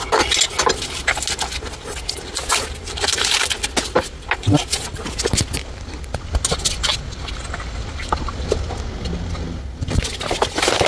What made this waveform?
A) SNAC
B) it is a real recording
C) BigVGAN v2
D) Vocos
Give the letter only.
B